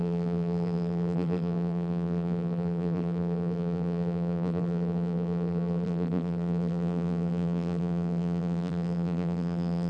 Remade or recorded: remade